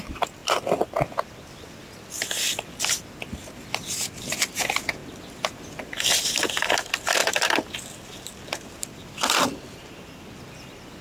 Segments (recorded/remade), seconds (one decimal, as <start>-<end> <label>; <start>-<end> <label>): 0.0-7.2 recorded; 7.2-9.4 remade; 9.4-11.0 recorded